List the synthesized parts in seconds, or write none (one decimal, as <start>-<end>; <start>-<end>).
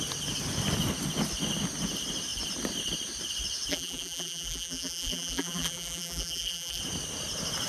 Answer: 3.7-6.8